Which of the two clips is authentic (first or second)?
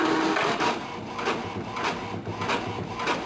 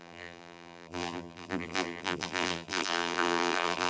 first